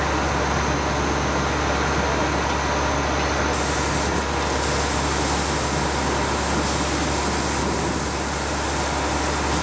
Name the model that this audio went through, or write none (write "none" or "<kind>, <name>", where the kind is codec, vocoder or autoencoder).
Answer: none